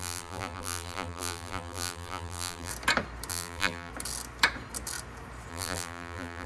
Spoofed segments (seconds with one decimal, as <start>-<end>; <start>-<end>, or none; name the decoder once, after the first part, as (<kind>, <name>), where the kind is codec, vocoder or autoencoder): 0.0-2.7 (vocoder, BigVGAN v2); 3.3-3.9; 5.5-6.5